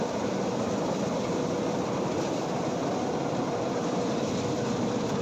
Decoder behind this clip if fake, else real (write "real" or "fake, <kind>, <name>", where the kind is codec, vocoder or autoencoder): fake, vocoder, BigVGAN v2